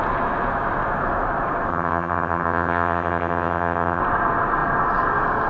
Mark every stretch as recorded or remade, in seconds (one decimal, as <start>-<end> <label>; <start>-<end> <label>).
0.0-1.7 recorded; 1.7-4.0 remade; 4.0-5.5 recorded